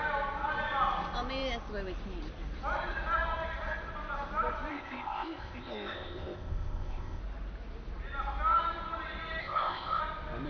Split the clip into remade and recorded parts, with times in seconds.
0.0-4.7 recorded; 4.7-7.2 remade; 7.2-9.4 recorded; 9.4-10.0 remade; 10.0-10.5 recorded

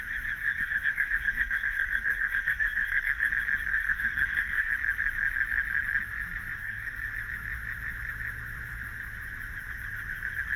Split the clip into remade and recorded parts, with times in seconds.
0.0-0.4 recorded; 0.4-3.3 remade; 3.3-3.7 recorded; 3.7-4.7 remade; 4.7-6.6 recorded; 6.6-7.1 remade; 7.1-10.6 recorded

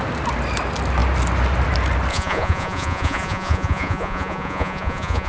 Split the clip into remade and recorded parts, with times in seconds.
0.0-2.1 recorded; 2.1-5.3 remade